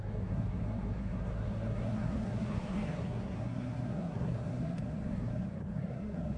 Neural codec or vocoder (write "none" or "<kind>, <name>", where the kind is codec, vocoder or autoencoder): codec, SNAC